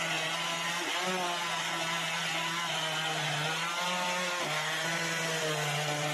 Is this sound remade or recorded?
recorded